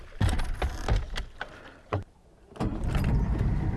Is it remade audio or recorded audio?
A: recorded